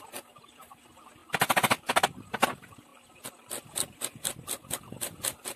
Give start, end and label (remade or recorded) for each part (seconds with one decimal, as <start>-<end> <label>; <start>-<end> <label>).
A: 0.0-5.6 recorded